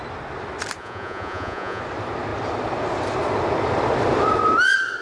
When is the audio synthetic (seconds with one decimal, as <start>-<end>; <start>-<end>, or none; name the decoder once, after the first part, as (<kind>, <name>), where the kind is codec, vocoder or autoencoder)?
0.8-1.8 (vocoder, Vocos)